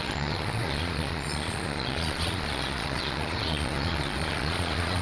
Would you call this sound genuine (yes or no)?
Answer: no